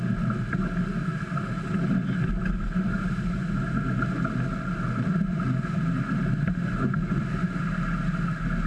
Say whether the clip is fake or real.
real